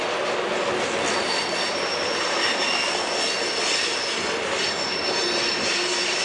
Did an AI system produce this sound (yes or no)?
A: no